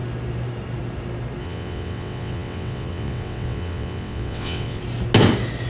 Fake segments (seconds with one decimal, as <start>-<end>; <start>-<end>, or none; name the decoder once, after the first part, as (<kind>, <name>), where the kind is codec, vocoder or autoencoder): 1.4-4.8 (vocoder, WaveNeXt)